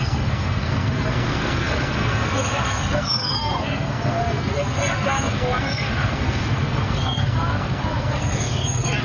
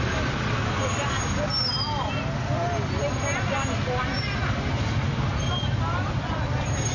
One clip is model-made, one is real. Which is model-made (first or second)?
first